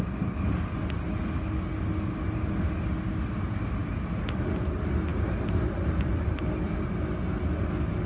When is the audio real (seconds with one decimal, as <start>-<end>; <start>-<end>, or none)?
0.0-5.1; 6.5-8.1